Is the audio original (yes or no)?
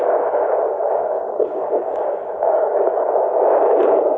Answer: no